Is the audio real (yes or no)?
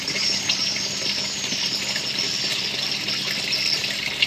yes